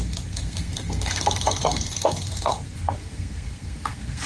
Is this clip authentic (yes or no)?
no